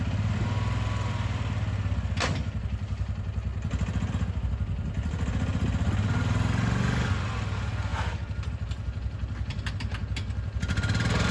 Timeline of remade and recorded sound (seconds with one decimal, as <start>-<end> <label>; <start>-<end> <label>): 0.0-11.3 recorded